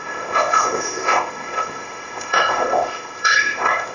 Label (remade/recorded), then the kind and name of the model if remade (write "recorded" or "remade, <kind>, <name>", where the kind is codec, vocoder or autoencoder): remade, codec, ZipCodec